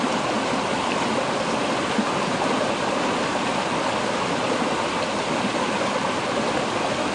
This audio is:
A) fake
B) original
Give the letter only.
B